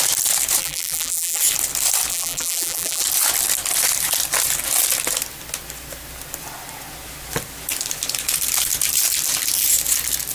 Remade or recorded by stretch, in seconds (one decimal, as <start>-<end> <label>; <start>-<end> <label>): 0.0-0.6 recorded; 0.6-1.4 remade; 1.4-2.1 recorded; 2.1-3.0 remade; 3.0-10.3 recorded